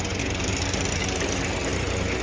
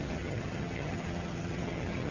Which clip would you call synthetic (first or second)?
second